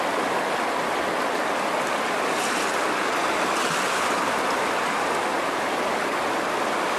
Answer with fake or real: real